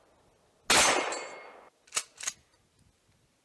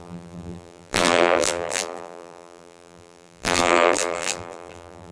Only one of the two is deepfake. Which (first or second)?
second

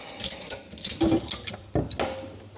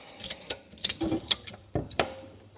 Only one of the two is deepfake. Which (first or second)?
second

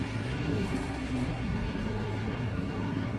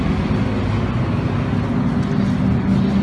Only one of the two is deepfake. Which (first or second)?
first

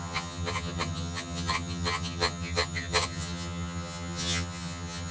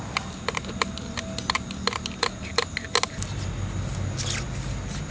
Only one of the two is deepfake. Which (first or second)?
first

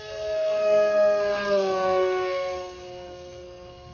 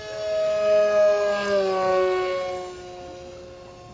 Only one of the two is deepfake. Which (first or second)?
first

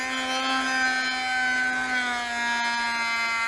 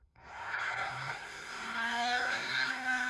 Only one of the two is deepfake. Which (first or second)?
second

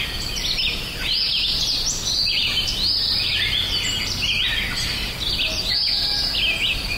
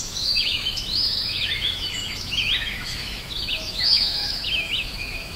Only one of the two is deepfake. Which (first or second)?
second